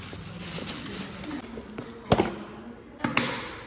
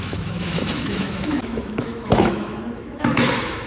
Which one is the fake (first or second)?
second